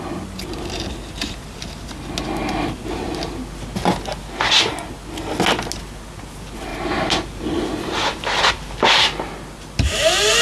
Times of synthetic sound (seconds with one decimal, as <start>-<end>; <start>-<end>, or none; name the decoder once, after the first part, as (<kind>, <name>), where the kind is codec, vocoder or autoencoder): 6.7-8.5 (vocoder, BigVGAN v2)